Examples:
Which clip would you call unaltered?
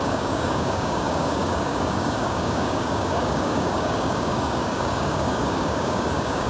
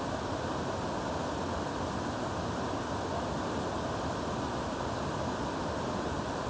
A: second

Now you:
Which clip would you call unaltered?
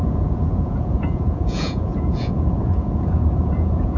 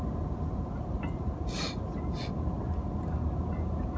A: second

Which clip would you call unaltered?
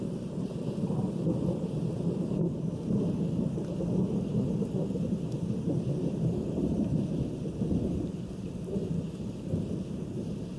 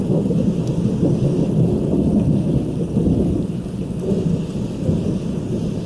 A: second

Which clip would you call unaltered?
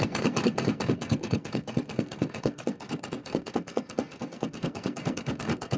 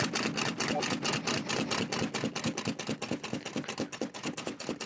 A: second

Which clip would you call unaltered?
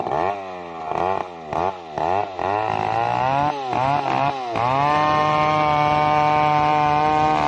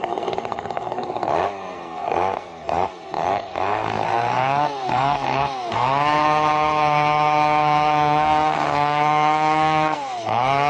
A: first